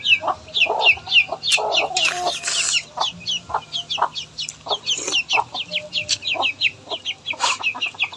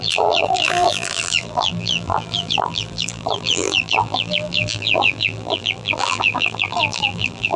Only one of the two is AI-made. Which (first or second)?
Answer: second